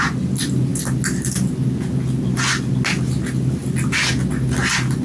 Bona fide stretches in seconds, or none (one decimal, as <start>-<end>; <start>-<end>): 0.0-5.0